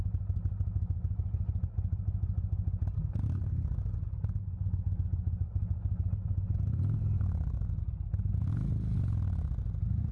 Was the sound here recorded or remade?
recorded